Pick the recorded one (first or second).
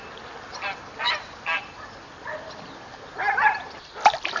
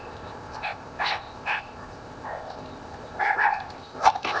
first